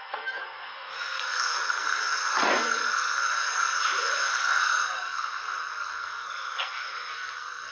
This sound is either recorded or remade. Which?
remade